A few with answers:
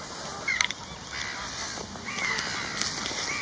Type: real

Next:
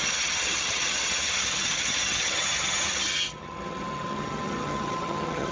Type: fake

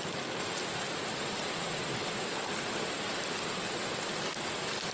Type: real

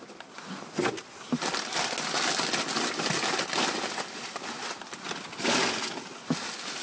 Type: real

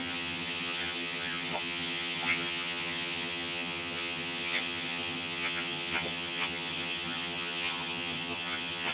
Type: fake